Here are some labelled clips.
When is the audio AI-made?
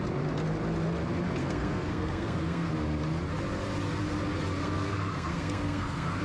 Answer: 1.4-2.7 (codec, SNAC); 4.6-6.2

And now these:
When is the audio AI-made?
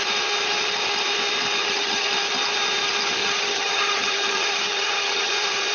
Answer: 1.6-2.1 (vocoder, HiFi-GAN); 3.2-5.3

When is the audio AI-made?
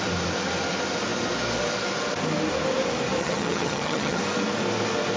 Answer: 3.2-4.2 (vocoder, HiFi-GAN)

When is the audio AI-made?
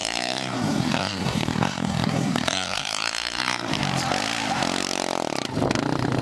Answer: 0.0-3.7 (codec, SNAC)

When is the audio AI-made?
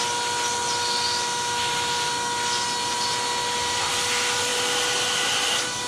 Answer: none